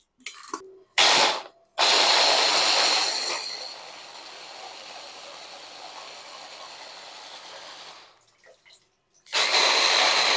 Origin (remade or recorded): recorded